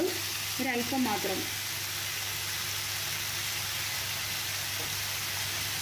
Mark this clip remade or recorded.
recorded